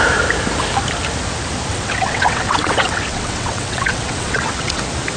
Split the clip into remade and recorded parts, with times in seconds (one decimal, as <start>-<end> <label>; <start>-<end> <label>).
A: 0.0-1.7 recorded; 1.7-4.8 remade; 4.8-5.2 recorded